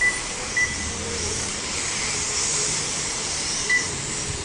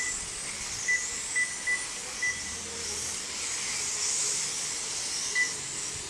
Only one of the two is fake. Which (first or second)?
first